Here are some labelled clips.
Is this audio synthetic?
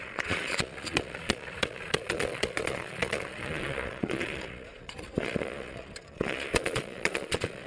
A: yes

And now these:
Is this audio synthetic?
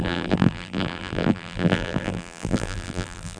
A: yes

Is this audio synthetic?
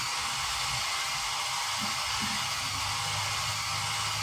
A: no